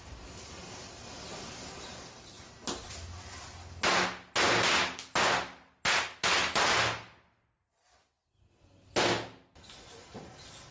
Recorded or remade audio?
recorded